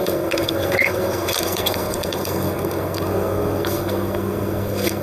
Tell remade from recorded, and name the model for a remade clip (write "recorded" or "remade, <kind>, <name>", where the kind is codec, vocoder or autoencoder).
remade, codec, SNAC